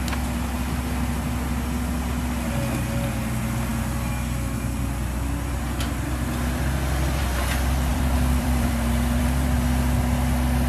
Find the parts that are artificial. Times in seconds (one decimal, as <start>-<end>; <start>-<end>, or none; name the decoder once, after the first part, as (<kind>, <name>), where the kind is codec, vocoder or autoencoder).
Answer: 7.9-9.2 (vocoder, BigVGAN v2)